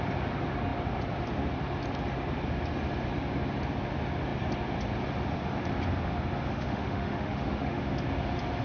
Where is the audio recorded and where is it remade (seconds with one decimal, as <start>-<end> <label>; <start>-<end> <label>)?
0.0-6.5 recorded; 6.5-7.8 remade; 7.8-8.6 recorded